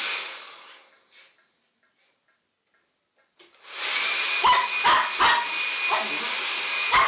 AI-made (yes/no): no